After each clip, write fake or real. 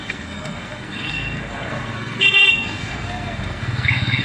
fake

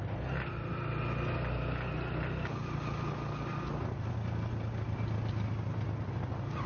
real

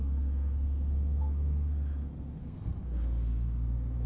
fake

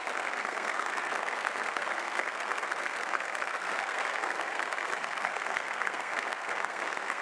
fake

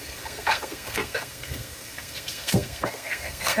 fake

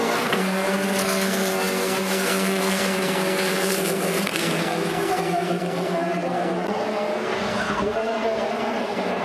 fake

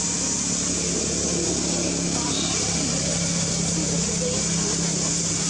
real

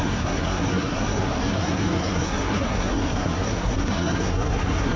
fake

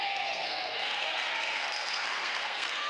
fake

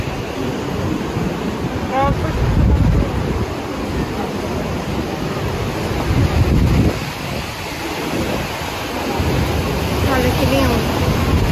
real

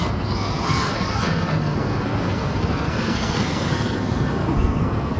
fake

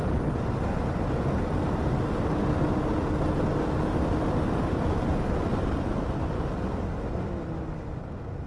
real